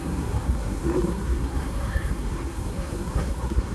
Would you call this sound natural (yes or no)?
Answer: no